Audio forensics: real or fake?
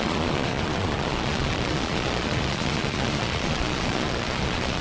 fake